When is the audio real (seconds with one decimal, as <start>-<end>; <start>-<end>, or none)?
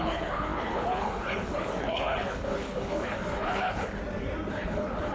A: 4.0-4.5